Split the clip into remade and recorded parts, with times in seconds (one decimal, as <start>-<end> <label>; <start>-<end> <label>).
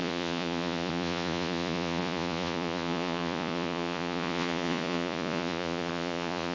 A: 0.0-6.5 remade